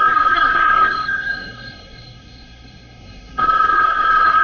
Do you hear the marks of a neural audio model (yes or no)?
yes